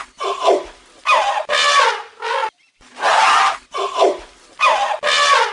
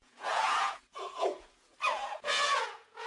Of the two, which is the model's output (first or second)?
second